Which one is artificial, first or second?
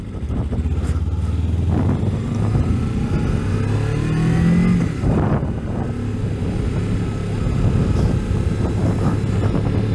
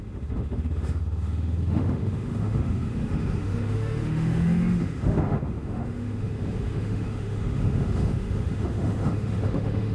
second